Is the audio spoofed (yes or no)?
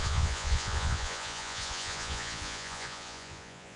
yes